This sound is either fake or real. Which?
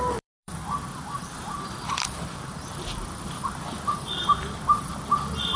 fake